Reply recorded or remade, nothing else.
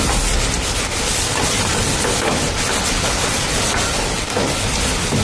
recorded